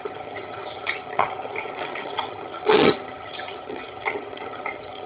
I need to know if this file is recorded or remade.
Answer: remade